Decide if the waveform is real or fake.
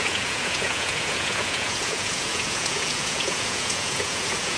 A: fake